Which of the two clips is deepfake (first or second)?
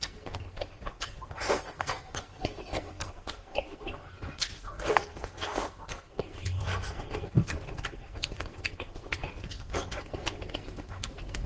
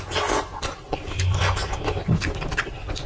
first